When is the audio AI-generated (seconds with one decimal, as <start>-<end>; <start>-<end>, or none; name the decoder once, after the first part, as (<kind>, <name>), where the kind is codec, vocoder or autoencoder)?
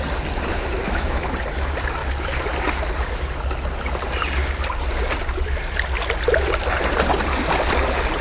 0.5-1.3 (autoencoder, DAC-VAE)